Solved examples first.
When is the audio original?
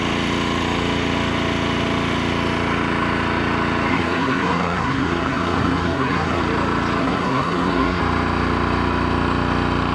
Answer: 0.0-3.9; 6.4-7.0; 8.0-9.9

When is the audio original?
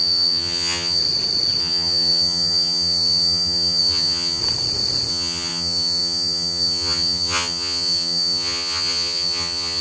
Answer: 1.0-1.6; 4.4-5.1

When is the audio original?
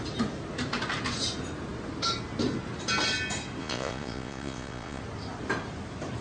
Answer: 0.0-3.6; 5.0-6.2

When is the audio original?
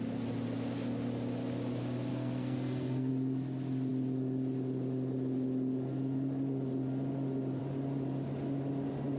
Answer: 0.0-2.1; 3.1-9.2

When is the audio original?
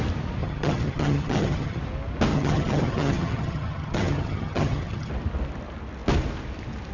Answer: 0.0-0.4; 1.8-2.3; 5.1-6.9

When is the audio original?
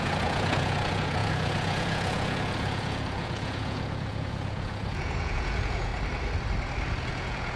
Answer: 5.9-7.0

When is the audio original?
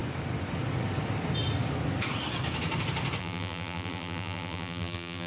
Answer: 0.0-3.2